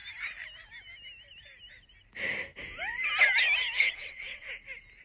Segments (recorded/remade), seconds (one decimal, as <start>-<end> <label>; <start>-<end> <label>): 0.0-3.8 recorded; 3.8-4.5 remade; 4.5-5.0 recorded